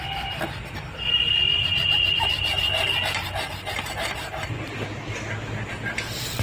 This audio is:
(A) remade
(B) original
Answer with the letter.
B